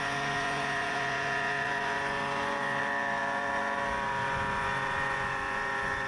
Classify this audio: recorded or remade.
remade